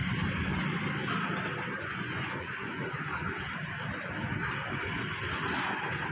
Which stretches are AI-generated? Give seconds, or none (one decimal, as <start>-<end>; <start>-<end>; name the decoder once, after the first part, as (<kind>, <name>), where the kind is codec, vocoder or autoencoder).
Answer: 1.8-2.8 (vocoder, Vocos)